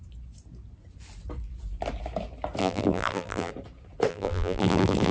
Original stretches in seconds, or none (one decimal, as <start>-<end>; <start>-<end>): 0.0-2.6; 3.5-4.1